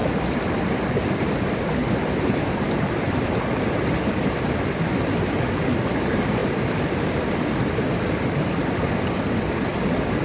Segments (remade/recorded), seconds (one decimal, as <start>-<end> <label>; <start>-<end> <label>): 0.0-1.2 remade; 1.2-1.8 recorded; 1.8-4.3 remade; 4.3-6.4 recorded; 6.4-8.5 remade; 8.5-9.7 recorded; 9.7-10.2 remade